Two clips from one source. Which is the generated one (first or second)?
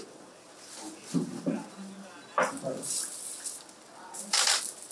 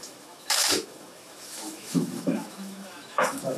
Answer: second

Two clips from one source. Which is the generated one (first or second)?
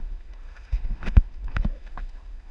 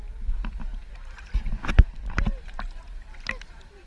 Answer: first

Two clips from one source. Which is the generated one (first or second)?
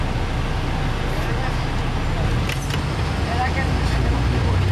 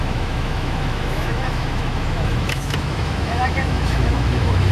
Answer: second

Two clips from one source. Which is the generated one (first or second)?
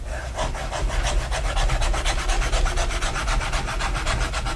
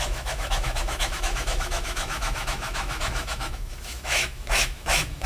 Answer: second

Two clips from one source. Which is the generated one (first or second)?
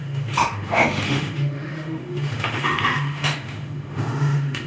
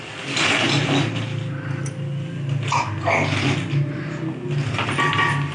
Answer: first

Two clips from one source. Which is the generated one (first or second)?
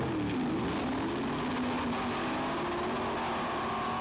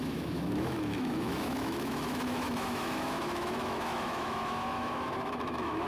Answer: second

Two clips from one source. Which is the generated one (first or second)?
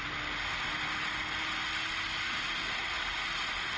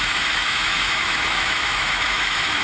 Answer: second